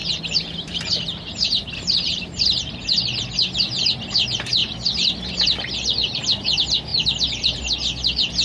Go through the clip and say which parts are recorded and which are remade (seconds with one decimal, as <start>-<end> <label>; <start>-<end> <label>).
0.0-3.0 remade; 3.0-4.6 recorded; 4.6-5.3 remade; 5.3-6.9 recorded; 6.9-7.6 remade; 7.6-8.4 recorded